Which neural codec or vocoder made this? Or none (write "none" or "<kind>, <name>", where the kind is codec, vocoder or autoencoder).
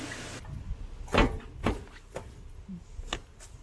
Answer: none